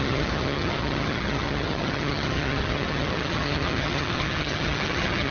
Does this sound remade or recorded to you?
remade